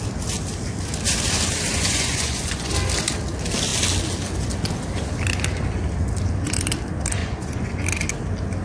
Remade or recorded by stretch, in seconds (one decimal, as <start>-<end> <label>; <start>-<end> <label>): 0.0-1.7 recorded; 1.7-2.7 remade; 2.7-7.2 recorded; 7.2-7.7 remade; 7.7-8.6 recorded